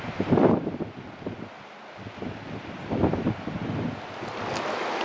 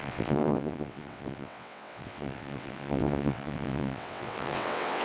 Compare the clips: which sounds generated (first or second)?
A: second